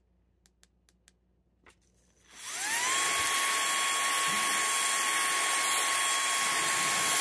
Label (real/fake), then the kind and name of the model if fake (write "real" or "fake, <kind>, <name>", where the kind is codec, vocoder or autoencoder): real